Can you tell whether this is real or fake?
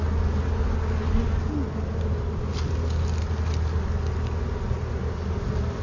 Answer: real